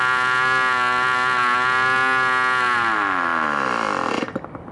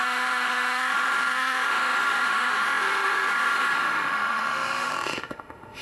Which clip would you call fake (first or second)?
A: second